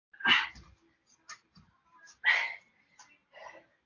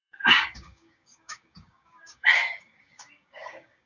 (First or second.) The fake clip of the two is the second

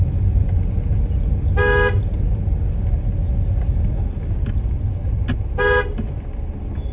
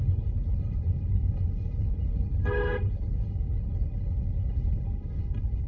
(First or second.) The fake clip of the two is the second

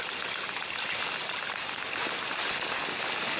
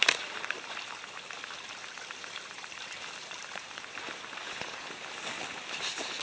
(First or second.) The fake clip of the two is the second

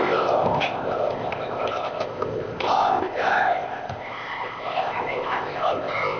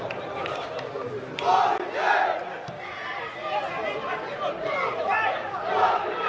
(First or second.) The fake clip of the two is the first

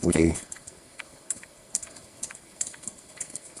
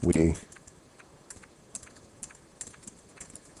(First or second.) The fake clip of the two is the first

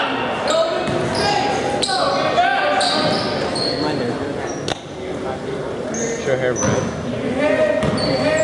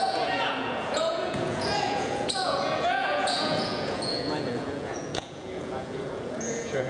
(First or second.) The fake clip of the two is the second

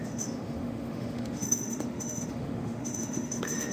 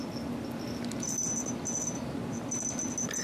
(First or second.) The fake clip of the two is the first